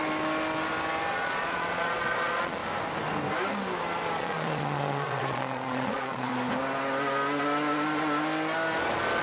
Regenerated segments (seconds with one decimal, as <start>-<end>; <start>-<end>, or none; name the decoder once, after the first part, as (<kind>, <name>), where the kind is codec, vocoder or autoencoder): 1.1-2.6 (vocoder, Vocos); 4.2-6.3